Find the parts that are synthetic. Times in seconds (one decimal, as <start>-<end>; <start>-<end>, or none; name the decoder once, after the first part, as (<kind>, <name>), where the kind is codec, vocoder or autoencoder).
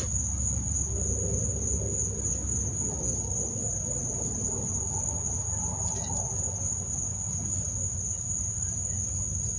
none